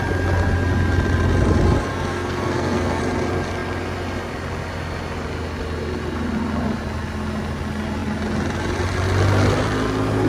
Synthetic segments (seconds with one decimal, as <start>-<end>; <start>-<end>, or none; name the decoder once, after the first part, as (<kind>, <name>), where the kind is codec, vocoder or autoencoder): 1.9-3.0 (codec, SNAC)